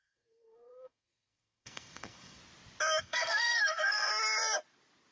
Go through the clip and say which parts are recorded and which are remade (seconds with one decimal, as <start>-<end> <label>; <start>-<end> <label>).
0.0-2.4 remade; 2.4-3.0 recorded; 3.0-4.1 remade; 4.1-5.1 recorded